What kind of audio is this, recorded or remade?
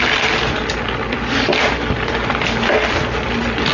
recorded